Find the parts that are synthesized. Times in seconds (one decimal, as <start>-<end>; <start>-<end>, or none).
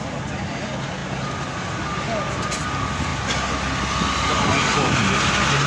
none